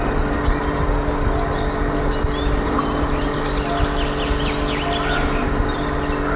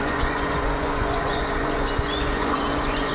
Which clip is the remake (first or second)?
second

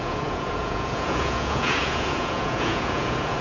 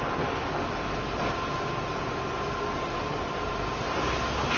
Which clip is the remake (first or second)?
first